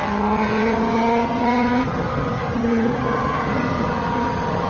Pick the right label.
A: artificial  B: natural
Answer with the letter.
A